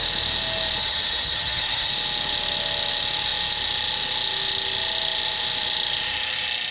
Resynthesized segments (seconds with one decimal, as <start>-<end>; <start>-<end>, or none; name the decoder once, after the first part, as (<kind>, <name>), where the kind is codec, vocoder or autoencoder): 0.8-1.9 (vocoder, HiFi-GAN)